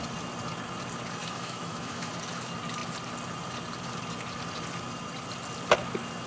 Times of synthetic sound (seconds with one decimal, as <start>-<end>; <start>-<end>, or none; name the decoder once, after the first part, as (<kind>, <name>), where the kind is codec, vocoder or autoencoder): 1.2-2.1 (autoencoder, DAC-VAE)